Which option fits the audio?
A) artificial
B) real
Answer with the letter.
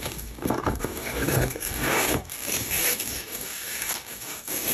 A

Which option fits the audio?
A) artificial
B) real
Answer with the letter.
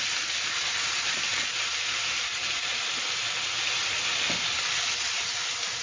B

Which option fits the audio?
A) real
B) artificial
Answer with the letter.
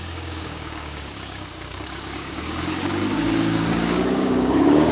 B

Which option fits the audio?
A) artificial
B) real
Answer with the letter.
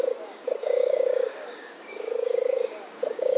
A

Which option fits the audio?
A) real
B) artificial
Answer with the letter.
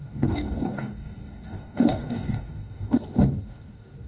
B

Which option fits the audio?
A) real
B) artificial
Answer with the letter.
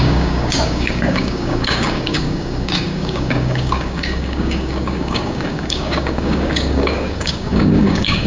B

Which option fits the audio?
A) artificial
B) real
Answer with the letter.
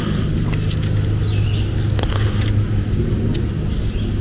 B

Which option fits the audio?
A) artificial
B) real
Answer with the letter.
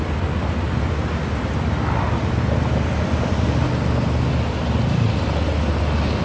B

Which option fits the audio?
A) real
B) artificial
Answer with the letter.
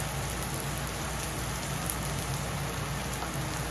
A